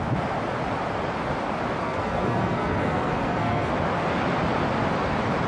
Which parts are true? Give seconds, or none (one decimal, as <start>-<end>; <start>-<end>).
0.0-1.8; 3.7-5.5